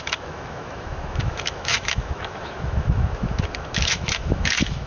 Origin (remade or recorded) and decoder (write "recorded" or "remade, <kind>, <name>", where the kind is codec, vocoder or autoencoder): remade, autoencoder, DAC-VAE